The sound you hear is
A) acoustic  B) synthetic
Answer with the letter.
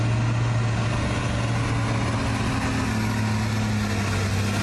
A